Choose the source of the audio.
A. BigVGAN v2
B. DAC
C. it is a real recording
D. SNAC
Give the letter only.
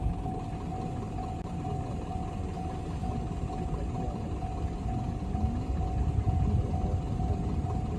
C